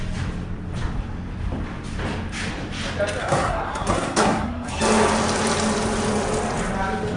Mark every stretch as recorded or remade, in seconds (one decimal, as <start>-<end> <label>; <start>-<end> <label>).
0.0-3.2 recorded; 3.2-4.8 remade; 4.8-7.2 recorded